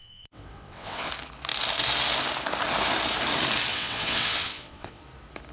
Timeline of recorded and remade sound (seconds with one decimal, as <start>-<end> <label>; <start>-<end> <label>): 0.0-1.1 remade; 1.1-3.7 recorded; 3.7-5.0 remade; 5.0-5.5 recorded